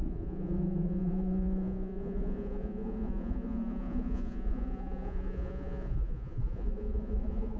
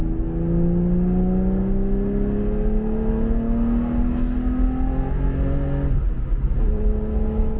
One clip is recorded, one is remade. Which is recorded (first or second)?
second